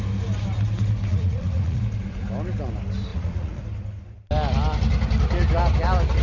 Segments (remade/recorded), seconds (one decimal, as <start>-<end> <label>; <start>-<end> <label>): 0.0-1.1 recorded; 1.1-1.8 remade; 1.8-3.1 recorded; 3.1-3.6 remade; 3.6-6.2 recorded